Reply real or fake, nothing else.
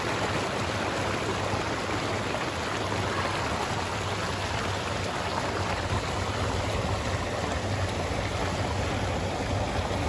real